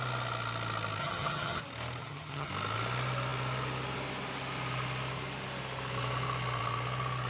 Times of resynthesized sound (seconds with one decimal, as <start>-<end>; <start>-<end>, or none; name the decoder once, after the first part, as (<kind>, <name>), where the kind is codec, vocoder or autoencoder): 1.0-1.6 (vocoder, HiFi-GAN); 2.0-2.5